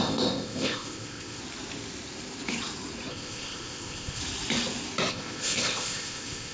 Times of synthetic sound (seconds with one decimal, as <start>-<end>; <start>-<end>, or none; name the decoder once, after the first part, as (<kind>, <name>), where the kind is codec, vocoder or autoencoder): 0.0-1.4 (codec, ZipCodec); 3.1-4.2; 5.1-6.5